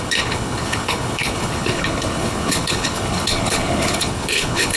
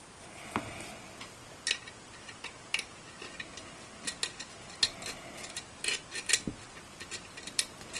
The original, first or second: second